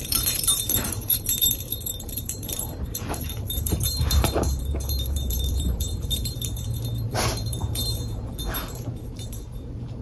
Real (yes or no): no